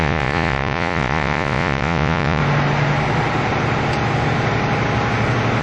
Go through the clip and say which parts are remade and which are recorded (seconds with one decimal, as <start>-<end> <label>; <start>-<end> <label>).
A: 0.0-2.4 remade; 2.4-5.6 recorded